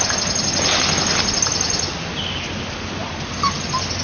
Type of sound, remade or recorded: recorded